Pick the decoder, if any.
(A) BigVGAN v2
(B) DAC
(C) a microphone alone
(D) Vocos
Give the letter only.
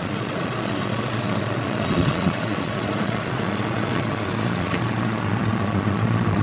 D